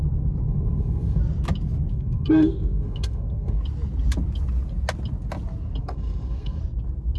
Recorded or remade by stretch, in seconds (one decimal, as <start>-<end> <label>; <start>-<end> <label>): 0.0-0.4 recorded; 0.4-1.2 remade; 1.2-1.9 recorded; 1.9-3.6 remade; 3.6-5.8 recorded; 5.8-6.6 remade; 6.6-7.2 recorded